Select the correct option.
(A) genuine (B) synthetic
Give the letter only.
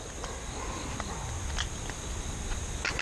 A